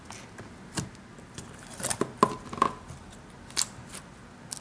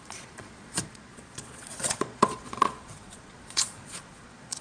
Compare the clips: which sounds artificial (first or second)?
second